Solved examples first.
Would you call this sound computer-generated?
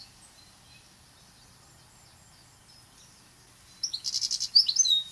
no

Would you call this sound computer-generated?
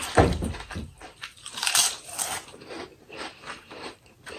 yes